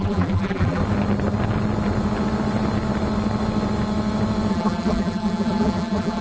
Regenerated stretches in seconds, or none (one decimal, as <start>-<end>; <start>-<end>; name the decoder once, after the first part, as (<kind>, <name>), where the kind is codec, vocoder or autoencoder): 0.0-0.8 (vocoder, BigVGAN v2); 4.5-6.2